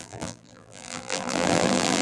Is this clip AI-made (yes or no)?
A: yes